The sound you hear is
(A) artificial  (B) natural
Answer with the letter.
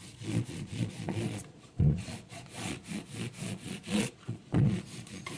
A